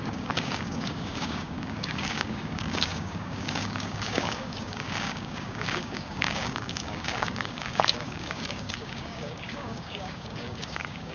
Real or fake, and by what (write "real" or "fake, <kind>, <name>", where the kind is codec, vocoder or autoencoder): fake, codec, DAC